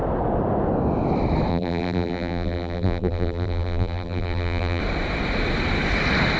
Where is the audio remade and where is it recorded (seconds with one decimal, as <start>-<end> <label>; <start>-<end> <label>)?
0.0-1.5 recorded; 1.5-4.8 remade; 4.8-6.4 recorded